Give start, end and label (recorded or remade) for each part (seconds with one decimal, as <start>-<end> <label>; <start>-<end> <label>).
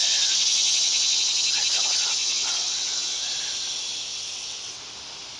0.0-1.2 remade; 1.2-2.2 recorded; 2.2-3.2 remade; 3.2-4.1 recorded; 4.1-4.8 remade; 4.8-5.4 recorded